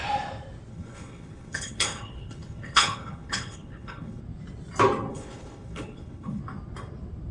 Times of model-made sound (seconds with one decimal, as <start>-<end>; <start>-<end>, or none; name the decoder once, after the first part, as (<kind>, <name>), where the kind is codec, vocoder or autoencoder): 0.7-4.2 (codec, HILCodec); 5.1-6.4